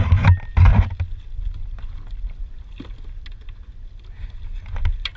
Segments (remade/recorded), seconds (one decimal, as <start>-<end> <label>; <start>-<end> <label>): 0.0-5.2 recorded